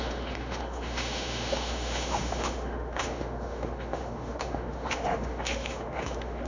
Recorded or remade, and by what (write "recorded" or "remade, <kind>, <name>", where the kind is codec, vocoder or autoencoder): remade, autoencoder, DAC-VAE